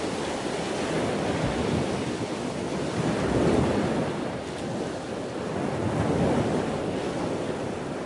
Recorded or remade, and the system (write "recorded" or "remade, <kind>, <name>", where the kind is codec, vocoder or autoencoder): recorded